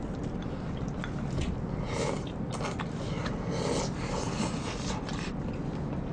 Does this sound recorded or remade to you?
recorded